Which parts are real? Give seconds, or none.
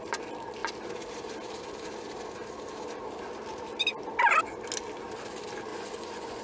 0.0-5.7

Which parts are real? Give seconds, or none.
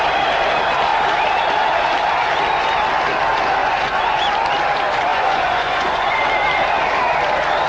0.0-3.6; 4.2-5.1; 6.2-7.7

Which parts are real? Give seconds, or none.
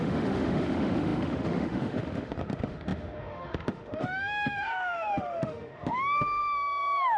none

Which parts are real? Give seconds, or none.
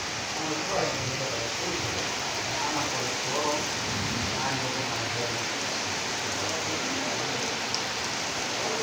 0.0-0.6; 1.2-8.8